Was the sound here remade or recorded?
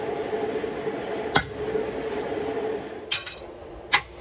recorded